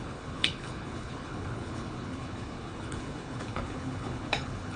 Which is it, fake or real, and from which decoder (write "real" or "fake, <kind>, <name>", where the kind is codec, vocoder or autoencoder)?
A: fake, codec, HILCodec